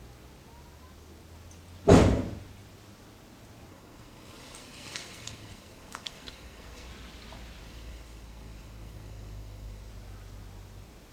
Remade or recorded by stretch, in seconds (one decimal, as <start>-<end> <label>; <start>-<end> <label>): 0.0-3.7 recorded; 3.7-6.9 remade; 6.9-7.6 recorded; 7.6-9.9 remade; 9.9-11.1 recorded